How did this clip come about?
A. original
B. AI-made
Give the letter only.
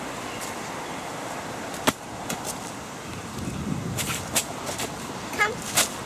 B